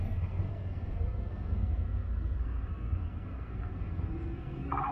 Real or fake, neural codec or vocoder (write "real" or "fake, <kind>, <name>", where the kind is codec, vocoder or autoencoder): fake, codec, SNAC